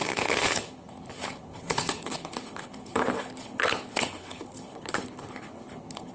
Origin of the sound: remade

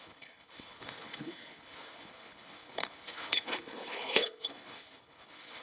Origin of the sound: remade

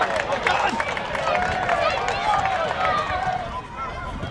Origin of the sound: recorded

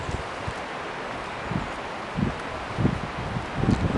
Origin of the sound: recorded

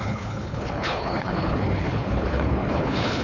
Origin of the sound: remade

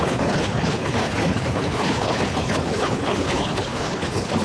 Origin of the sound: remade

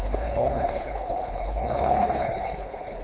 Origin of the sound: remade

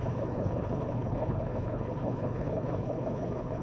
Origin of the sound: remade